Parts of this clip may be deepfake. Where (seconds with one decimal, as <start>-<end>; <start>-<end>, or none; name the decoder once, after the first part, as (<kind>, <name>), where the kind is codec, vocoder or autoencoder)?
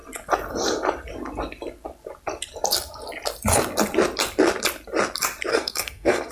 5.5-6.3 (codec, SNAC)